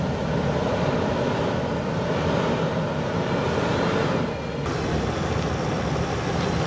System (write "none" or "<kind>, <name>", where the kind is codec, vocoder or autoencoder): none